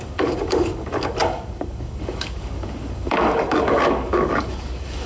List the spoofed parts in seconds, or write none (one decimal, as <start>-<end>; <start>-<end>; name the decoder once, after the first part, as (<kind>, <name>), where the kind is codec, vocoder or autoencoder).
0.0-5.1 (codec, DAC)